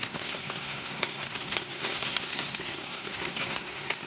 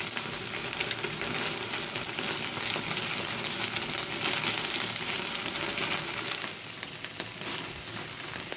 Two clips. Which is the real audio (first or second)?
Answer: second